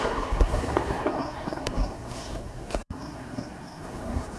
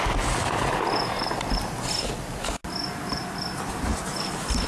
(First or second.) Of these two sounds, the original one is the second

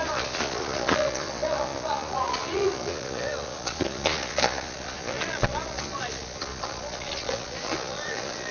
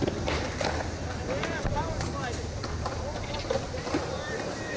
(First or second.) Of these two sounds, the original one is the second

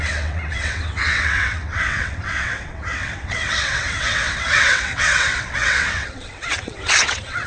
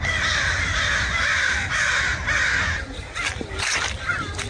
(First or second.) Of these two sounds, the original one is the second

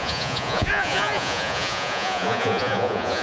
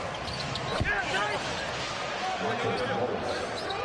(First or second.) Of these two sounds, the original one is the second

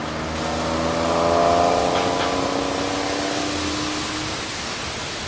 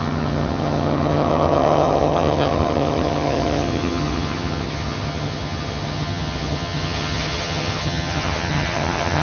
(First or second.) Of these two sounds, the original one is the first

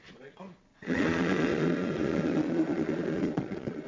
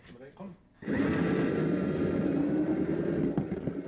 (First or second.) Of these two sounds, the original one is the second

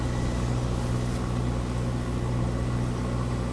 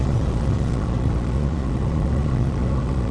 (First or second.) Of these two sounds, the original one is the first